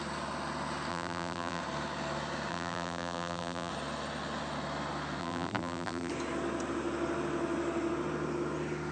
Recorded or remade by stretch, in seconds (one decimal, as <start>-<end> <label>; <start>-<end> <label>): 0.0-0.9 recorded; 0.9-1.6 remade; 1.6-2.5 recorded; 2.5-3.7 remade; 3.7-5.2 recorded; 5.2-6.1 remade; 6.1-8.9 recorded